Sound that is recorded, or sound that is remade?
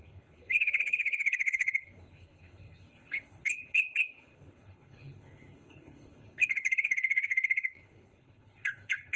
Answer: remade